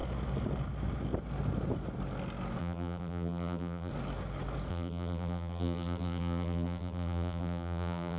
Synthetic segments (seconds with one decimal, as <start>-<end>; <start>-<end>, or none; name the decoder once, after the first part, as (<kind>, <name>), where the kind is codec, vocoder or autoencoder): 2.6-3.9 (vocoder, BigVGAN v2); 4.7-8.2